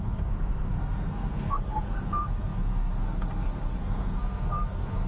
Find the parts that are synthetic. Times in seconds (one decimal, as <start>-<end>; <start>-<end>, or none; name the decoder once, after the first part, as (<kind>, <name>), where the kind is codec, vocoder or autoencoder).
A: 0.0-5.1 (codec, SNAC)